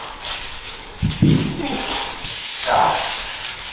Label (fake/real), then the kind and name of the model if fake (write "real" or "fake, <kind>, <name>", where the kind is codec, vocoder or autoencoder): fake, codec, DAC